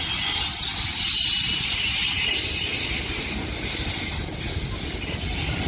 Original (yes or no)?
yes